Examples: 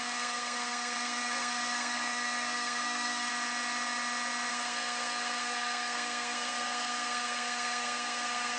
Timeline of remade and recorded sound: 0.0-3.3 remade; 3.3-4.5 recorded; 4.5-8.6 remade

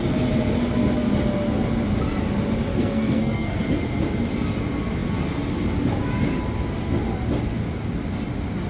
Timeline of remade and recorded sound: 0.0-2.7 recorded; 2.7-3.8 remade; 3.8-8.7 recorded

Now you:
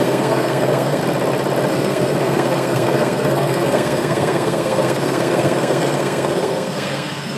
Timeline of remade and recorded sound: 0.0-1.0 remade; 1.0-1.7 recorded; 1.7-7.4 remade

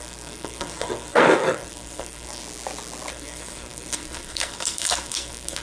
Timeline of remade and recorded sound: 0.0-2.4 remade; 2.4-3.1 recorded; 3.1-5.6 remade

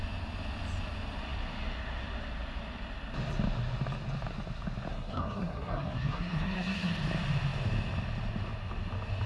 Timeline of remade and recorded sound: 0.0-4.9 recorded; 4.9-6.9 remade; 6.9-9.3 recorded

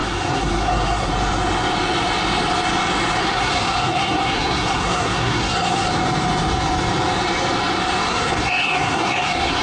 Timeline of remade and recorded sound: 0.0-1.1 remade; 1.1-3.2 recorded; 3.2-5.9 remade; 5.9-8.1 recorded; 8.1-9.6 remade

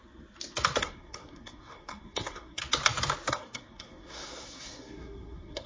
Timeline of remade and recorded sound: 0.0-0.8 recorded; 0.8-2.6 remade; 2.6-3.3 recorded; 3.3-5.7 remade